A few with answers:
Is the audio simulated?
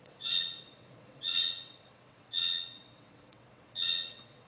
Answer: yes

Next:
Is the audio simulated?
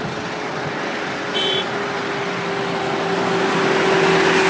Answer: no